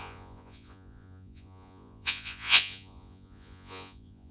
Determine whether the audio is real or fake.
fake